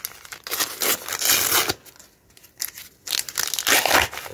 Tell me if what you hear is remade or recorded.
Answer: recorded